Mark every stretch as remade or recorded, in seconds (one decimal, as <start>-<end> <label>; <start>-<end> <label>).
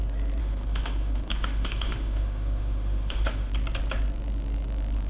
0.0-0.4 recorded; 0.4-3.5 remade; 3.5-5.1 recorded